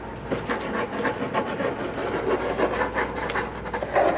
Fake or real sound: real